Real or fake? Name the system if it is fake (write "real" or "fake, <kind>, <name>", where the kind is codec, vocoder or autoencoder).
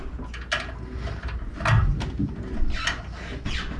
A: real